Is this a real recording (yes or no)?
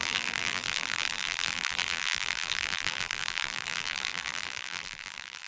no